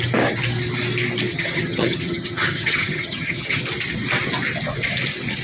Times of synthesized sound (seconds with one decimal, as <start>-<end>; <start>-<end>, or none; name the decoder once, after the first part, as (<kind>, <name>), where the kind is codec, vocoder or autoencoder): 1.3-3.6 (vocoder, HiFi-GAN)